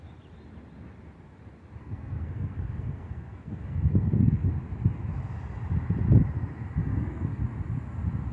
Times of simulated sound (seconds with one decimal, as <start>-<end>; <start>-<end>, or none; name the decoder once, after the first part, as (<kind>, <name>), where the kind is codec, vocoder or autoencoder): 1.8-4.5 (codec, SNAC); 6.8-7.4